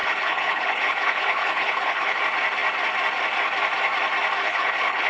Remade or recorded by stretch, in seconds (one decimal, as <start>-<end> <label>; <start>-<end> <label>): 0.0-2.2 remade; 2.2-4.4 recorded; 4.4-5.1 remade